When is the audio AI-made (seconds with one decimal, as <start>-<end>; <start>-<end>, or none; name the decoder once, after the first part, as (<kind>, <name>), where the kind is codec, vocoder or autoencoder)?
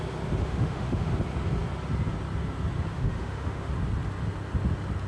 0.4-1.1 (autoencoder, DAC-VAE); 2.9-3.7